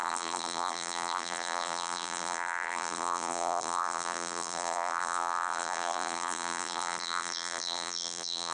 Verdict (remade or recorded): remade